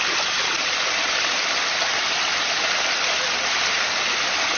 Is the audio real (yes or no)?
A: yes